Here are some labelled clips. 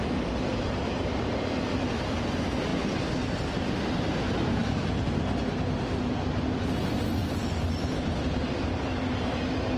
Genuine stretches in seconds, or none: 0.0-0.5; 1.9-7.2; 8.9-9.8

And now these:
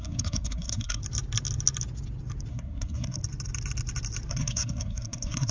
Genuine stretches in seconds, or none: 1.0-2.5; 3.2-4.3